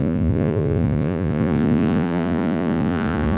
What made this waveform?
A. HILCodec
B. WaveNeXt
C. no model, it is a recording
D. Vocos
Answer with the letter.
D